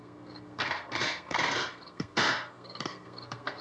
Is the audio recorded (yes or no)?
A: no